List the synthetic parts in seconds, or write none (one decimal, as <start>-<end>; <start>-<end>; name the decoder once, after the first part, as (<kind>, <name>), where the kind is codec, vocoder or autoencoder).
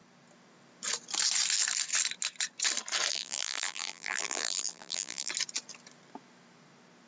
3.1-5.3 (vocoder, BigVGAN v2)